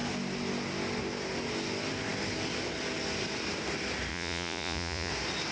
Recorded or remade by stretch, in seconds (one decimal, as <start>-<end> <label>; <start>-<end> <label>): 0.0-4.1 recorded; 4.1-5.1 remade; 5.1-5.5 recorded